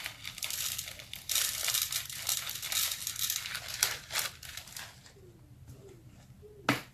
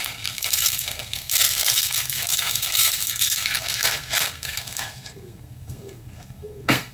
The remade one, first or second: second